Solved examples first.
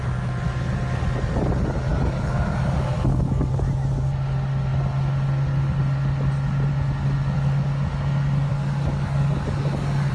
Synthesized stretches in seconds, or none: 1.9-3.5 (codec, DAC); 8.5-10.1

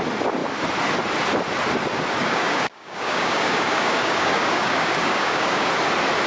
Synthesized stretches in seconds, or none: 2.2-5.7 (codec, DAC)

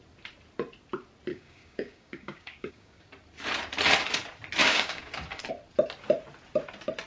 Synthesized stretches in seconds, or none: 1.3-3.1 (codec, DAC); 4.6-5.4

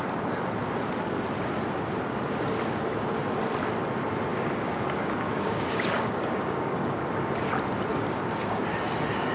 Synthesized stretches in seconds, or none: 4.3-7.0 (codec, DAC); 7.9-8.6

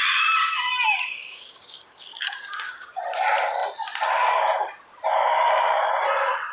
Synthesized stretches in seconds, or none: 1.2-3.0 (codec, DAC); 5.1-5.9

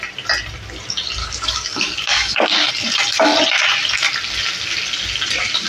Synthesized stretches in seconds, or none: 1.2-2.7 (codec, DAC)

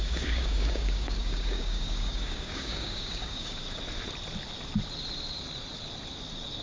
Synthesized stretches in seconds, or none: 0.0-3.6 (codec, DAC)